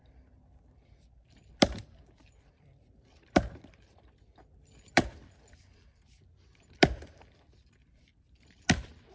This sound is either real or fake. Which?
fake